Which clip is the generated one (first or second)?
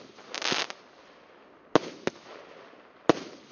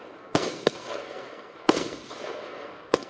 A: second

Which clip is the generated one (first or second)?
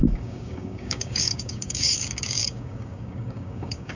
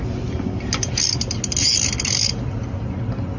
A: first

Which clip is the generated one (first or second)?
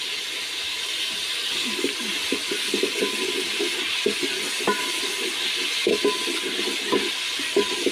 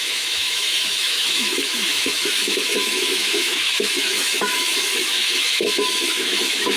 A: second